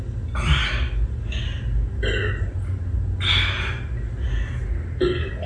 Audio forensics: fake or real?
real